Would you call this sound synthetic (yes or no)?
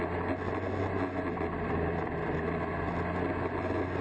no